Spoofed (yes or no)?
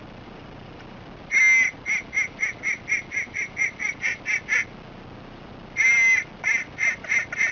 no